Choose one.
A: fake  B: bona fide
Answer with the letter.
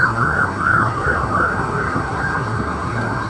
A